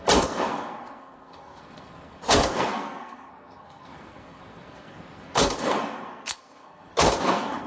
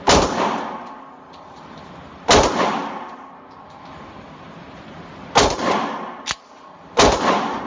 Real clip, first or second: second